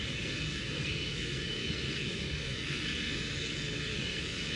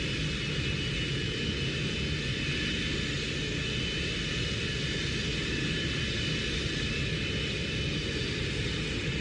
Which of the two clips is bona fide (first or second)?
second